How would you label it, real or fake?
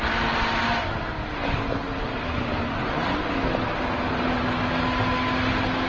real